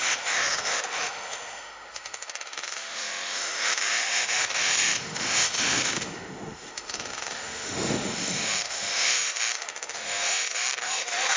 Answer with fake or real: fake